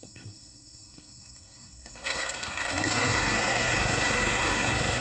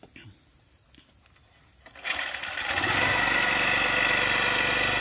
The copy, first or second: first